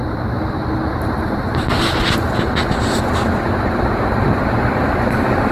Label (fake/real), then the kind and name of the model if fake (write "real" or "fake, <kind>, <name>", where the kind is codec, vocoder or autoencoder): fake, vocoder, BigVGAN v2